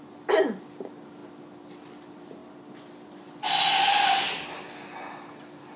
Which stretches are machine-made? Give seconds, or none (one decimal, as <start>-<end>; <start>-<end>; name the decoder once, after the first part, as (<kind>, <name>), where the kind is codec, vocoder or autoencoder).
none